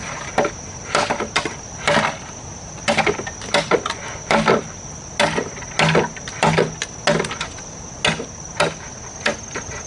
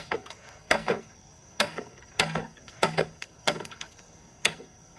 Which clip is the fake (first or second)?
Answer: second